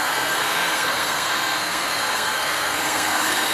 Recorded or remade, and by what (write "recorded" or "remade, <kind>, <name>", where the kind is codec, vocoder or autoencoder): remade, codec, SNAC